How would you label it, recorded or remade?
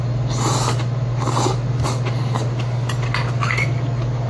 recorded